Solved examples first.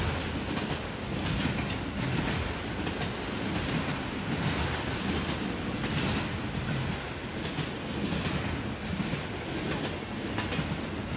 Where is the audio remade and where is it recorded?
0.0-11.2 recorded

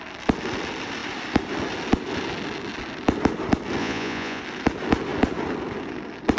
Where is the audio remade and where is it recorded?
0.0-3.8 recorded; 3.8-4.4 remade; 4.4-6.4 recorded

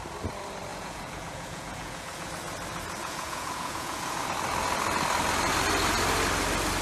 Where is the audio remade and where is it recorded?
0.0-0.7 recorded; 0.7-2.3 remade; 2.3-3.0 recorded; 3.0-4.2 remade; 4.2-6.8 recorded

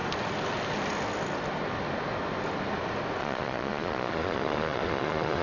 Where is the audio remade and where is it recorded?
0.0-3.2 recorded; 3.2-5.4 remade

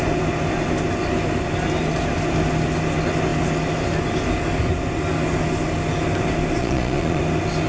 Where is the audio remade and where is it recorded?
0.0-6.6 recorded; 6.6-7.2 remade; 7.2-7.7 recorded